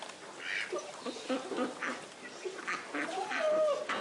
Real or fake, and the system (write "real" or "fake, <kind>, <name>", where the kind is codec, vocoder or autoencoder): real